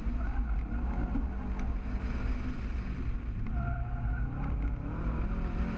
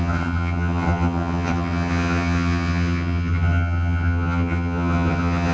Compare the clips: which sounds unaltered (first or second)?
first